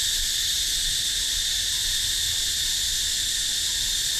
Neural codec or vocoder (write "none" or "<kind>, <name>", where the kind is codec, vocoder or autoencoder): none